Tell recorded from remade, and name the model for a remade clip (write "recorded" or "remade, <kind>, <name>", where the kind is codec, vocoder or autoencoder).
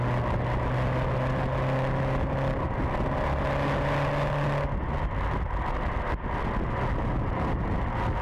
recorded